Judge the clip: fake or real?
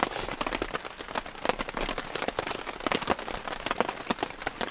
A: real